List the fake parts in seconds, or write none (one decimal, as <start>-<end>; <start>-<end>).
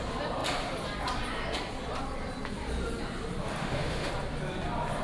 3.6-4.1